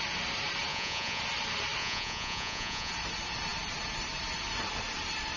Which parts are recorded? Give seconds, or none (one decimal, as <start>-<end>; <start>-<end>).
0.0-0.7; 1.2-1.8; 2.9-5.4